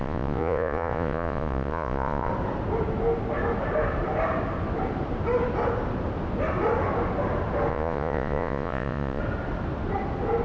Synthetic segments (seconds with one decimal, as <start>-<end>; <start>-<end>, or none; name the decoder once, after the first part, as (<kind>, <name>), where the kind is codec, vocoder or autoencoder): 0.0-2.3 (vocoder, Vocos); 7.7-9.2